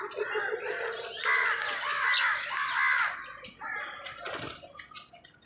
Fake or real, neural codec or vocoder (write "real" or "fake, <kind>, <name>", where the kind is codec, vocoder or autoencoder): real